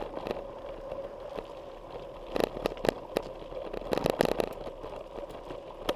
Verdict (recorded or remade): recorded